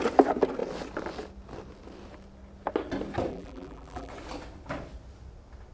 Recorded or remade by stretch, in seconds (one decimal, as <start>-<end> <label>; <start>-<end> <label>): 0.0-3.3 recorded; 3.3-4.1 remade; 4.1-5.7 recorded